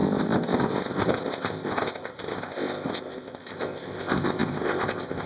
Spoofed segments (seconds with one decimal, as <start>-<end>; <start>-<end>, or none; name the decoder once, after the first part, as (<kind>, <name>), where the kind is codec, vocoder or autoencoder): 0.0-5.3 (codec, ZipCodec)